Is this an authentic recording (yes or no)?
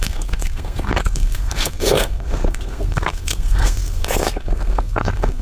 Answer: no